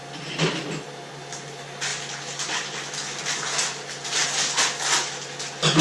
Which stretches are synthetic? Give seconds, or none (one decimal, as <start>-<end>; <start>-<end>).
none